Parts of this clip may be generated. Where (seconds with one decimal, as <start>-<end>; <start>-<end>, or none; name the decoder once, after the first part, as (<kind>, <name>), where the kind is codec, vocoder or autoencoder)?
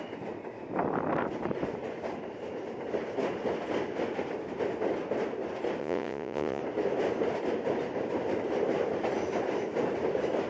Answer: 5.8-6.6 (vocoder, Vocos)